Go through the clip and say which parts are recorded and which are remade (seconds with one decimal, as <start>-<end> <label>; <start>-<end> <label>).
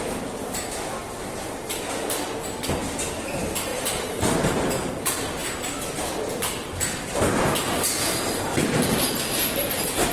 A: 0.0-10.1 recorded